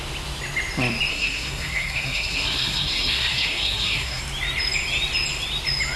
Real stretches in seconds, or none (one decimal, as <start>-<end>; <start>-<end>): 0.0-1.1; 4.2-6.0